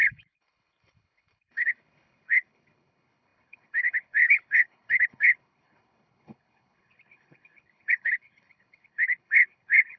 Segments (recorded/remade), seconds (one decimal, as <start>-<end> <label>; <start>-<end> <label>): 0.0-10.0 remade